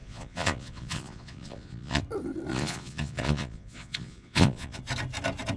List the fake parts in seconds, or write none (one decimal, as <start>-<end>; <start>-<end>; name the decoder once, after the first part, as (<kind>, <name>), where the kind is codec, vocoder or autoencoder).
0.0-2.0 (vocoder, Vocos); 2.5-4.8